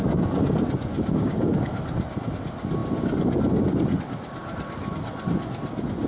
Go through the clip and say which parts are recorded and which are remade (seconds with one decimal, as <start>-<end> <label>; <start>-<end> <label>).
0.0-0.9 recorded; 0.9-1.7 remade; 1.7-6.1 recorded